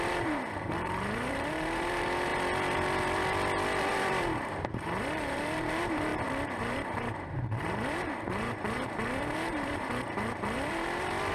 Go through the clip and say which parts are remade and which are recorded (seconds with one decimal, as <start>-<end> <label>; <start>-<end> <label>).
0.0-2.3 remade; 2.3-3.9 recorded; 3.9-6.1 remade; 6.1-6.6 recorded; 6.6-11.3 remade